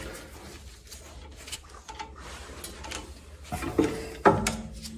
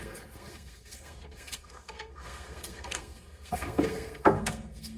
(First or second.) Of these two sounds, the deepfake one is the second